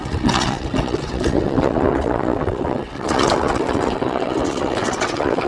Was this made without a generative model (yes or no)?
no